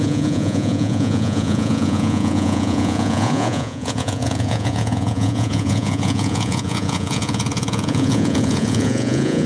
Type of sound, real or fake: fake